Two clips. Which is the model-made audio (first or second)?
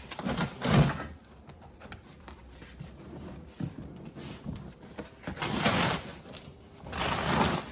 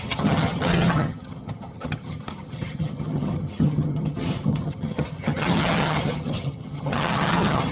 second